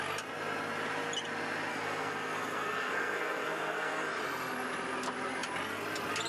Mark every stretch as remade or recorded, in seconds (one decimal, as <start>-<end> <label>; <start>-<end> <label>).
0.0-1.7 recorded; 1.7-4.2 remade; 4.2-6.3 recorded